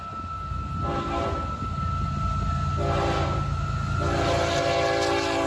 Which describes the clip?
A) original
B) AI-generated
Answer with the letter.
A